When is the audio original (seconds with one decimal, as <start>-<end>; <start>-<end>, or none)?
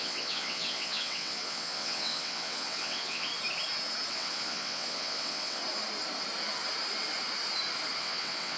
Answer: 3.3-4.1; 5.6-8.0